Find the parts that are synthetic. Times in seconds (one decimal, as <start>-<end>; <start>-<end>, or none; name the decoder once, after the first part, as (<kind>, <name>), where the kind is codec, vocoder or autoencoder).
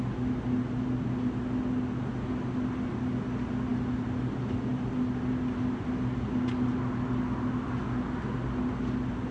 none